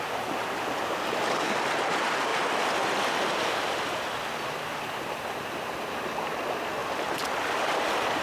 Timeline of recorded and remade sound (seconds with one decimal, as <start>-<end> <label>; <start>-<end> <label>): 0.0-8.2 recorded